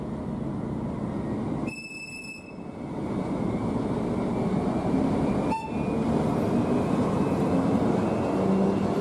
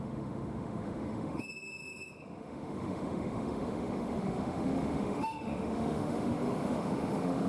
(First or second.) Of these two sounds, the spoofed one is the second